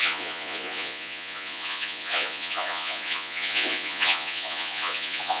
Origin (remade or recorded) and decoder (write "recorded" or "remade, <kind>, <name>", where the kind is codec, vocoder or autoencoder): remade, vocoder, Vocos